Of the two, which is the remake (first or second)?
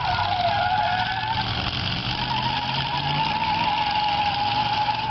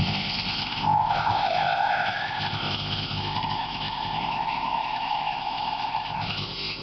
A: second